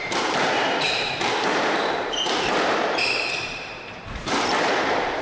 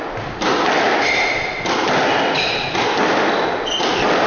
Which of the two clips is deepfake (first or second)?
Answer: first